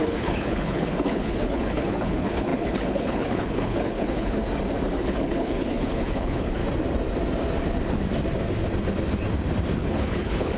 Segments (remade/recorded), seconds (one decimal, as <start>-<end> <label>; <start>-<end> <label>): 0.0-4.4 remade; 4.4-5.0 recorded; 5.0-6.6 remade; 6.6-9.8 recorded; 9.8-10.6 remade